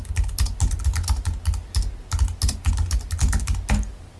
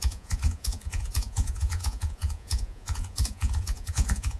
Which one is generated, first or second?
second